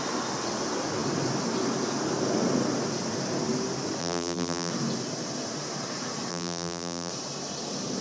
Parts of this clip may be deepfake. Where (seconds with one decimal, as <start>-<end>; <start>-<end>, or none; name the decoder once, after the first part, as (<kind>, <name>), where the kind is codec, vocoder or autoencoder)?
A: 4.0-4.7 (vocoder, BigVGAN v2); 6.3-7.1

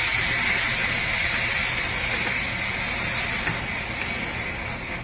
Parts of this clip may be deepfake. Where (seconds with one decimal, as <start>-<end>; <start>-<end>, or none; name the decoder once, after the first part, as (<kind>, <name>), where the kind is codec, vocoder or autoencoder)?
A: none

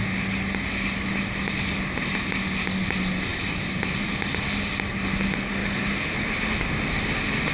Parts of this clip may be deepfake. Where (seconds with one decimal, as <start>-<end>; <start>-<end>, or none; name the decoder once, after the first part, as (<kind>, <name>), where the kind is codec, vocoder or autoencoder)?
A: 3.3-4.1 (vocoder, BigVGAN v2); 5.6-6.3

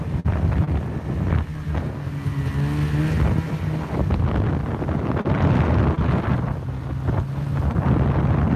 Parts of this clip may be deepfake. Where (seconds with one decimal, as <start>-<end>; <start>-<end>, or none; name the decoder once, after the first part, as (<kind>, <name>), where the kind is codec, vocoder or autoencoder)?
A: none